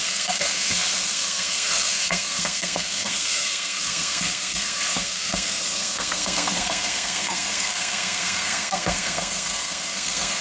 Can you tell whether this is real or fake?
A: fake